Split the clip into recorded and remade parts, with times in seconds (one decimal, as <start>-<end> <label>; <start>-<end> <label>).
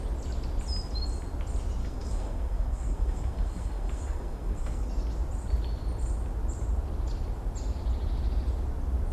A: 0.0-1.8 recorded; 1.8-4.9 remade; 4.9-9.1 recorded